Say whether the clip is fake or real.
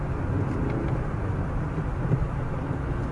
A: real